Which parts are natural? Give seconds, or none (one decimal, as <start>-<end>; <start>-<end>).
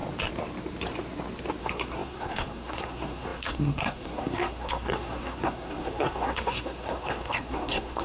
0.0-1.6